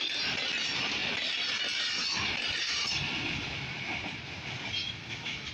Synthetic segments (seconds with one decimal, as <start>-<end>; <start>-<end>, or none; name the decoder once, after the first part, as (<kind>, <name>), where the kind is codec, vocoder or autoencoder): 4.8-5.5 (autoencoder, DAC-VAE)